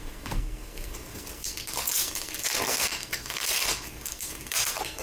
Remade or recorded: remade